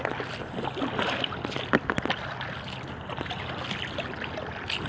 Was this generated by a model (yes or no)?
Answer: no